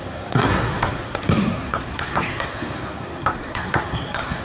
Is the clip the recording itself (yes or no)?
no